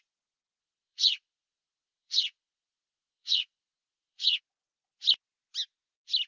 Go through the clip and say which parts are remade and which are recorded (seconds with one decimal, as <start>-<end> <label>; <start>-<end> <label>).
0.0-0.6 recorded; 0.6-4.4 remade; 4.4-6.3 recorded